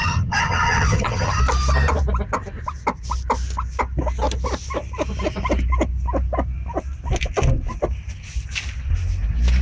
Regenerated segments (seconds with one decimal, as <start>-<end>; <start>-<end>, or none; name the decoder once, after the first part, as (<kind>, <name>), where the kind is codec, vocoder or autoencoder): 0.0-1.4 (vocoder, HiFi-GAN)